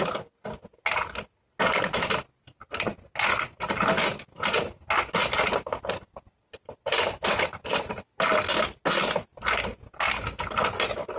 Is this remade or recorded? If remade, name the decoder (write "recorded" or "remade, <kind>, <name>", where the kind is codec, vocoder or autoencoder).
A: recorded